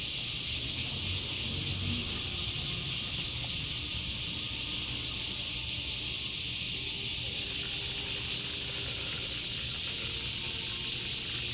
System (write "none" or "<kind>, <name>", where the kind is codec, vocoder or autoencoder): none